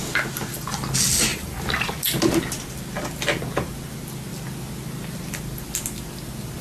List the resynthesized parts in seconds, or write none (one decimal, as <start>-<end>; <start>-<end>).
1.3-2.0